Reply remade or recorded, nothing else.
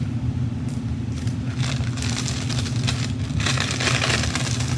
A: recorded